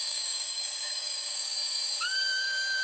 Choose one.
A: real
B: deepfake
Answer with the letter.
B